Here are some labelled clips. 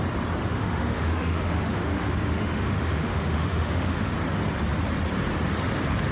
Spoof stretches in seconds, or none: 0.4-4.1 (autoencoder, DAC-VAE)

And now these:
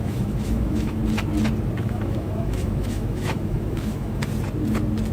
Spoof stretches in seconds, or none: 0.0-1.0 (autoencoder, DAC-VAE); 1.8-4.3

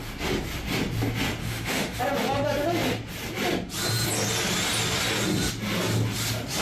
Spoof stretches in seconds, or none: 1.4-2.0 (autoencoder, DAC-VAE)

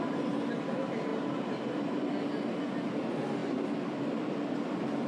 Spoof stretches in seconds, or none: none

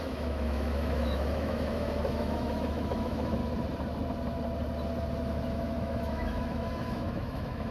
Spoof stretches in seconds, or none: 0.0-3.4 (autoencoder, DAC-VAE); 5.3-7.7

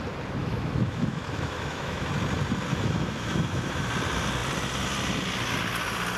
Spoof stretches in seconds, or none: 0.4-2.1 (autoencoder, DAC-VAE); 2.7-3.9

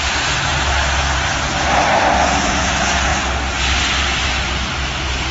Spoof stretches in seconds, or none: none

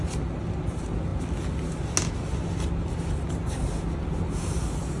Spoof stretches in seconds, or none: none